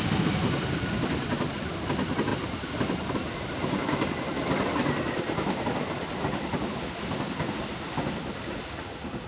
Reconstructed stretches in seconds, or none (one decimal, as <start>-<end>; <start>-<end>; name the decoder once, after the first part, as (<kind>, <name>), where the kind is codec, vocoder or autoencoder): none